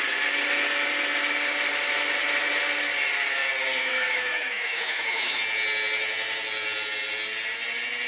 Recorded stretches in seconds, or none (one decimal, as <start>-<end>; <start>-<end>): 0.0-3.8; 5.4-8.1

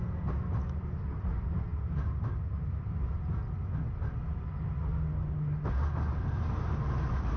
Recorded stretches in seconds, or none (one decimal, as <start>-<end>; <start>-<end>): 0.0-7.4

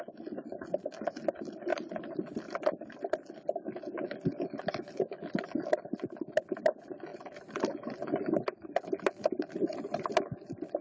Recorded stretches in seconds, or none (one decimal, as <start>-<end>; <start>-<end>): 0.0-10.8

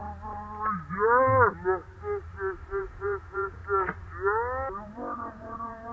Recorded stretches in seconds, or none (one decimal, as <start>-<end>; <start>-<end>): 0.0-2.8; 3.6-5.3

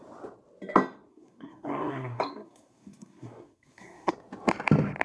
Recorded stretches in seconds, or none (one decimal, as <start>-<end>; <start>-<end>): 0.0-1.1; 4.1-5.0

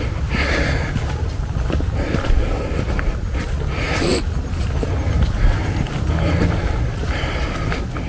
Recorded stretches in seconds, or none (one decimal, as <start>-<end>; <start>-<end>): 0.0-8.1

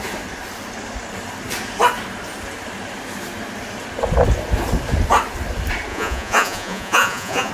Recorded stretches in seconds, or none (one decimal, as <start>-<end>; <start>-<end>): 0.0-5.9